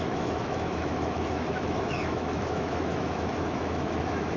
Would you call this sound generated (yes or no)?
yes